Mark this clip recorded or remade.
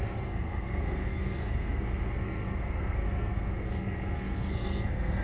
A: remade